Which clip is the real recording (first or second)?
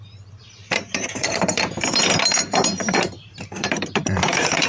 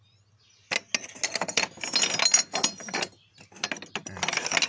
second